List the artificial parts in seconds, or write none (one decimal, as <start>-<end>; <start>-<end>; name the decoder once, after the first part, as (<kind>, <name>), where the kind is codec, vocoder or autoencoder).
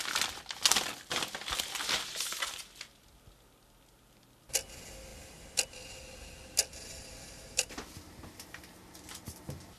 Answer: none